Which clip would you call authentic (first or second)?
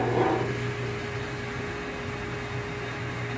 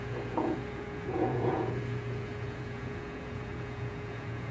first